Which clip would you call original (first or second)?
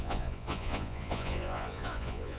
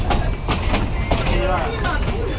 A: second